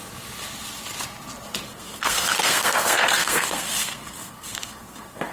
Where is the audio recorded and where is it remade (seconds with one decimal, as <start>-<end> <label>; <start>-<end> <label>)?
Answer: 0.0-1.7 recorded; 1.7-5.3 remade